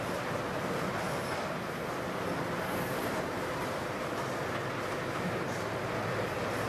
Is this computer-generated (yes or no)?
no